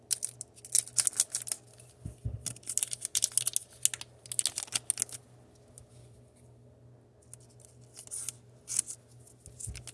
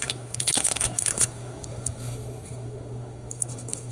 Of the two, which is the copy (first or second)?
second